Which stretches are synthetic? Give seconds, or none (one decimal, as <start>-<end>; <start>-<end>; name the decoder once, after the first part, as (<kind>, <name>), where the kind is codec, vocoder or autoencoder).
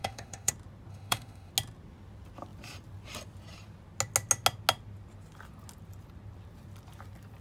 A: 0.0-0.5 (autoencoder, DAC-VAE); 0.9-1.5